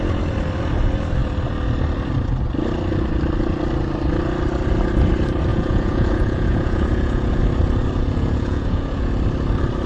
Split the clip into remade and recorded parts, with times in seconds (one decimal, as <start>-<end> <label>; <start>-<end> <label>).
0.0-5.5 recorded; 5.5-7.4 remade; 7.4-8.0 recorded; 8.0-9.1 remade; 9.1-9.9 recorded